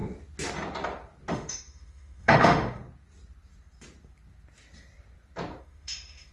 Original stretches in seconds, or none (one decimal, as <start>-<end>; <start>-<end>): 0.0-1.3; 2.8-5.6